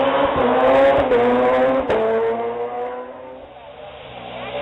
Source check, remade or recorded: recorded